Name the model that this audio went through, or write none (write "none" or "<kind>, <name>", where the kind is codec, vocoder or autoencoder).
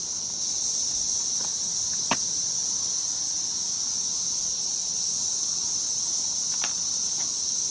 none